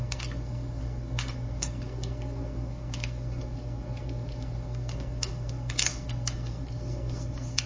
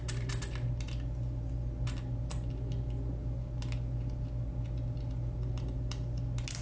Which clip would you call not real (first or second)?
first